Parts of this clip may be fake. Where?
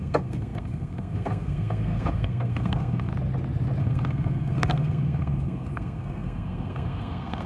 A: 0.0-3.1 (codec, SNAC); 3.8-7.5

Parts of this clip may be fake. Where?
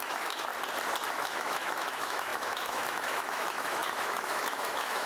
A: 0.0-0.5 (autoencoder, DAC-VAE); 1.1-5.1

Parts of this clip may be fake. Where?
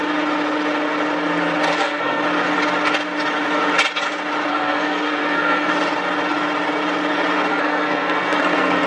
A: 1.7-2.2 (codec, SNAC); 4.5-5.7; 7.5-8.9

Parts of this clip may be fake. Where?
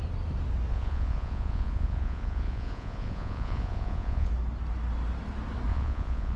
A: 0.7-4.3 (vocoder, Vocos); 5.7-6.4